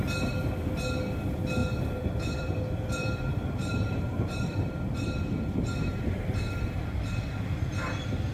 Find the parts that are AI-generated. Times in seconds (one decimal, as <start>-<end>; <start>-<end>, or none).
1.6-4.9; 5.9-7.7